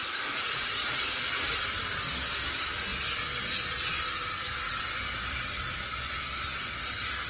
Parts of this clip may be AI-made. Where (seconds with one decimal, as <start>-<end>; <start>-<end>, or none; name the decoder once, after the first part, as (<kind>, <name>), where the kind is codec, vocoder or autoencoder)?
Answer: 0.0-1.0 (vocoder, Vocos)